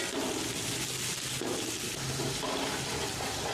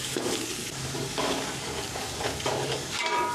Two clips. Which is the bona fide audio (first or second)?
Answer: first